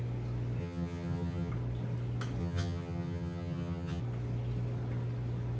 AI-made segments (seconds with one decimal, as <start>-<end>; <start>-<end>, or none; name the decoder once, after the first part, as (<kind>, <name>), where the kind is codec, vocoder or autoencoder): 0.6-1.5 (vocoder, HiFi-GAN); 2.4-4.0